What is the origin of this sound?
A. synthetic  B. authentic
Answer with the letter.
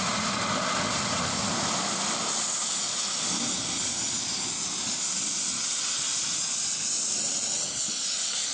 B